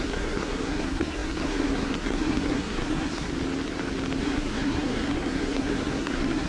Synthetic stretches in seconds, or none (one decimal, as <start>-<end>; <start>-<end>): 0.0-3.3; 4.2-6.5